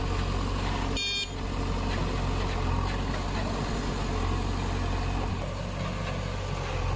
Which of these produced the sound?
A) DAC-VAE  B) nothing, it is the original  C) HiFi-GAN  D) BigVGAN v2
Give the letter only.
B